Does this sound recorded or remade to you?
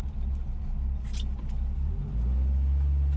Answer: recorded